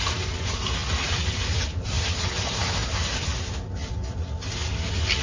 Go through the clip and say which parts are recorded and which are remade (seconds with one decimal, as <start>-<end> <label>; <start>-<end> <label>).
0.0-5.2 recorded